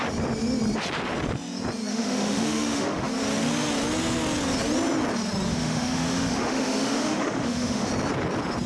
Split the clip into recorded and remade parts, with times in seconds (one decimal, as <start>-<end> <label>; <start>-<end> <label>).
0.0-1.9 recorded; 1.9-3.1 remade; 3.1-5.5 recorded; 5.5-7.9 remade; 7.9-8.7 recorded